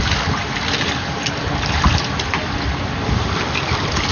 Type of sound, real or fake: real